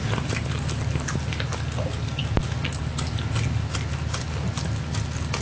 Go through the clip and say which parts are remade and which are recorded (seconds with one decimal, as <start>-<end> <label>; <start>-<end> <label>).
0.0-5.4 recorded